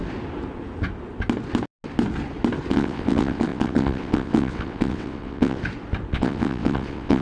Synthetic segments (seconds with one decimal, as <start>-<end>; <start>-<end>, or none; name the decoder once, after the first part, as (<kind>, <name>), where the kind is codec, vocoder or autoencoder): 2.7-5.6 (vocoder, WaveNeXt); 6.1-7.2